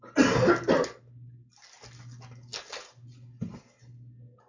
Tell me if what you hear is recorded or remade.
recorded